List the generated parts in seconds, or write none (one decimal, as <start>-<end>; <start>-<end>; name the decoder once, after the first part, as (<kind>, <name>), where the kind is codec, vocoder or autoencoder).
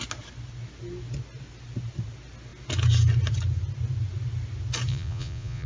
4.9-5.7 (vocoder, Vocos)